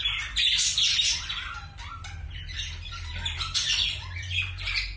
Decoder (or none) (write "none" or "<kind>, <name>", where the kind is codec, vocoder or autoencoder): vocoder, BigVGAN v2